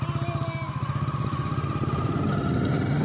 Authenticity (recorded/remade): recorded